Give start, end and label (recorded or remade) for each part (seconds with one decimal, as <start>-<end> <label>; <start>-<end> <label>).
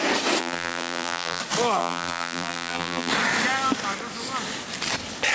0.0-0.4 recorded; 0.4-1.4 remade; 1.4-1.8 recorded; 1.8-3.1 remade; 3.1-5.3 recorded